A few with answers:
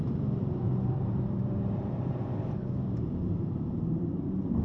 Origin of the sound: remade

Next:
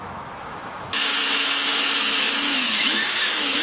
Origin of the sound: remade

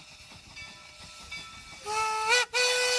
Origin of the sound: recorded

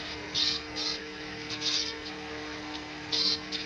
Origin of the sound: remade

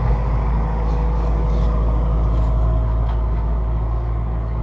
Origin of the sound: remade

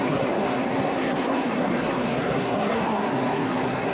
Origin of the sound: remade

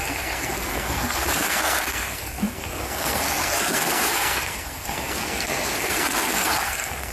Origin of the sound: remade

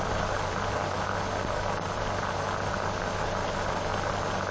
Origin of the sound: recorded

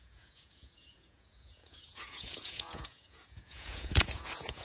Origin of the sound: remade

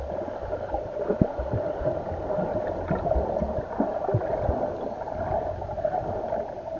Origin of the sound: recorded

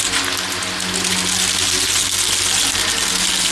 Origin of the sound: recorded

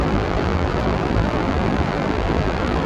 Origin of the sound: remade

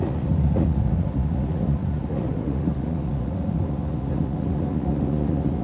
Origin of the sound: remade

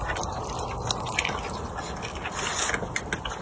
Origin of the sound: recorded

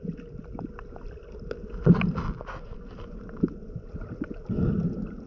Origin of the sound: recorded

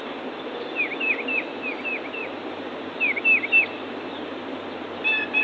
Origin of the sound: recorded